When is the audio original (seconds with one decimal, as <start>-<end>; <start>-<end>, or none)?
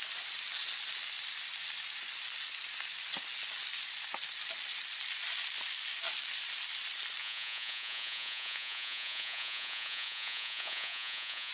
0.0-7.2